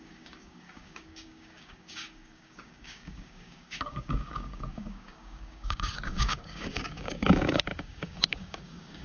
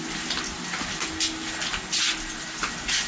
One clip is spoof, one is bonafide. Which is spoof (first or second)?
first